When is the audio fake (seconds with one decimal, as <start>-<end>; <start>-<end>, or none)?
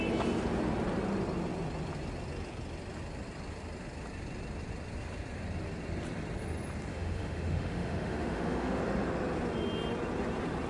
6.9-8.8